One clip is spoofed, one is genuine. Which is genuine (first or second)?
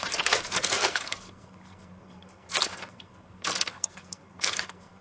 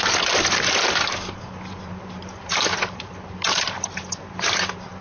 second